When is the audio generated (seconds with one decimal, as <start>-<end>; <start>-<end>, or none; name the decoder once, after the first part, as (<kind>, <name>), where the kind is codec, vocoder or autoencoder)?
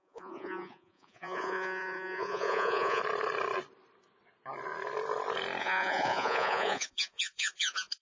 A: 0.0-3.0 (vocoder, Vocos); 5.6-8.0